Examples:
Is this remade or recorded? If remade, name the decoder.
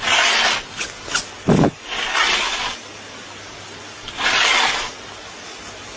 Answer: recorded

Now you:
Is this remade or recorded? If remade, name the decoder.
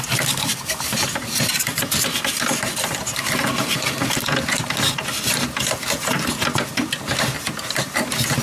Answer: recorded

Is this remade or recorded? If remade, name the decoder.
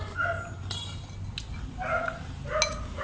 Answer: recorded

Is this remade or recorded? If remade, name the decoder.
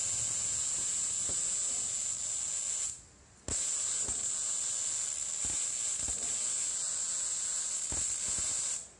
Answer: recorded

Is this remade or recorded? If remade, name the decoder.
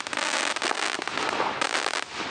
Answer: recorded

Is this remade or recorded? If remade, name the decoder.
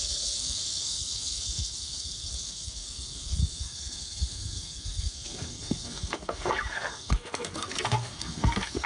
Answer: remade, codec, SNAC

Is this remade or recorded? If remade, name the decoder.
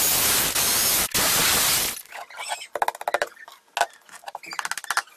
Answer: recorded